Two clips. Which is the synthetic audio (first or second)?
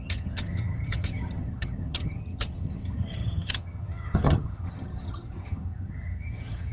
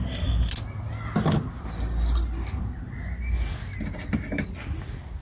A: first